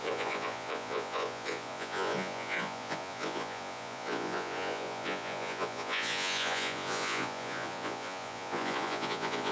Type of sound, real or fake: fake